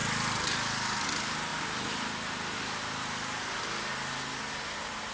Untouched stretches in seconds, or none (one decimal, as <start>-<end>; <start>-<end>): 0.0-5.1